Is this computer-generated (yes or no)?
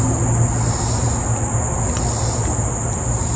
no